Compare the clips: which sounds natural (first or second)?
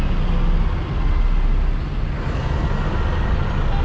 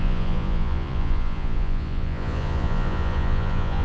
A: first